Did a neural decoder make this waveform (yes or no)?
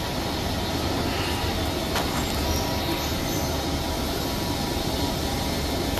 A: no